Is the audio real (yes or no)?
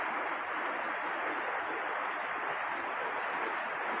yes